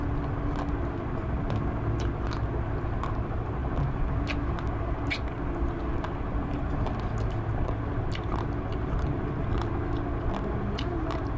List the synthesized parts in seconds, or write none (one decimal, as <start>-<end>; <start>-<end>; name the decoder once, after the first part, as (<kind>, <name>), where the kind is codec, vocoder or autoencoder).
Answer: none